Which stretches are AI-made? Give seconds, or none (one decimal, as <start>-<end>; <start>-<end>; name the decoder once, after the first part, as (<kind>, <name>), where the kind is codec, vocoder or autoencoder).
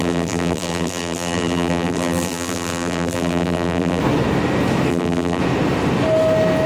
0.0-4.0 (vocoder, BigVGAN v2); 4.9-5.4